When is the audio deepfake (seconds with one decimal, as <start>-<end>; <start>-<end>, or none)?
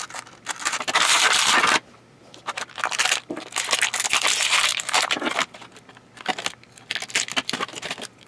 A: 4.7-5.3